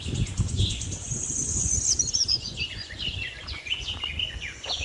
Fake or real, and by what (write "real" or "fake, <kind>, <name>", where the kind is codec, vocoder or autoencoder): fake, vocoder, Vocos